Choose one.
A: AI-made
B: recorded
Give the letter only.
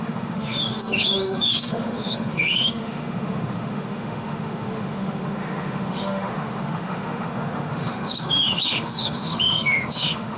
A